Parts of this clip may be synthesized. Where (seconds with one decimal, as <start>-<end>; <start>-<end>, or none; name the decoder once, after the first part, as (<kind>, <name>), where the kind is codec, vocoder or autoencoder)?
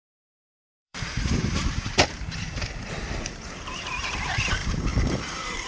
0.0-5.7 (vocoder, BigVGAN v2)